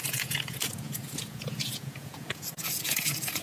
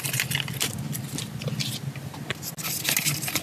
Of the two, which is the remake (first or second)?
first